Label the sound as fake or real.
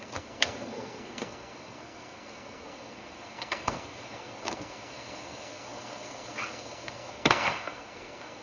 fake